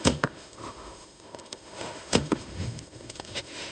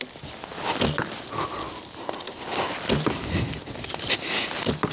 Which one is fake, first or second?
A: first